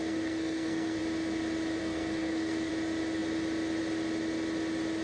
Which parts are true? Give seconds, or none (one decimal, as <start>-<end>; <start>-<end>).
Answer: 1.0-1.8; 2.7-5.0